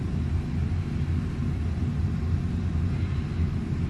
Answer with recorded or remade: recorded